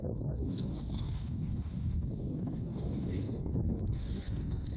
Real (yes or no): no